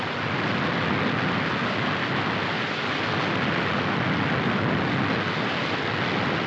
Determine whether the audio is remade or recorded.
recorded